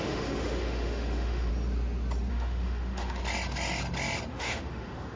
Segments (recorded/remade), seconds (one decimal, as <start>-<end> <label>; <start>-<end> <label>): 0.0-1.5 remade; 1.5-2.3 recorded; 2.3-3.2 remade; 3.2-4.3 recorded; 4.3-5.2 remade